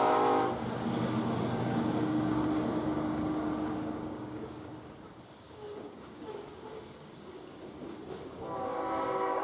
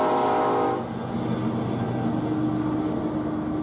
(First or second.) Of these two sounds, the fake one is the first